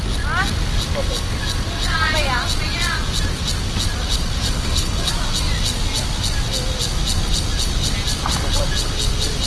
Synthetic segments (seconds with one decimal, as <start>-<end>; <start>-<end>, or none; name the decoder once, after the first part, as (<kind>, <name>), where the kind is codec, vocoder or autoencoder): 4.4-5.1 (codec, HILCodec)